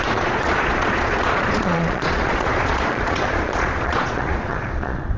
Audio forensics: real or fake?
fake